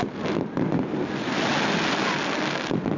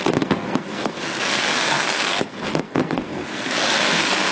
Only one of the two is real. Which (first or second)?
first